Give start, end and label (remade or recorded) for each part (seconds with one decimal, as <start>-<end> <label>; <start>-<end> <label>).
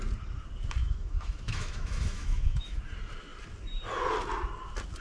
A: 0.0-0.8 recorded; 0.8-2.8 remade; 2.8-5.0 recorded